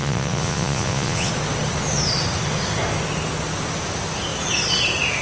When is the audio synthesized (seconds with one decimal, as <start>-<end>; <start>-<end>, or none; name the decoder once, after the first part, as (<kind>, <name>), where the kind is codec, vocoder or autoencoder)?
0.0-1.3 (vocoder, Vocos)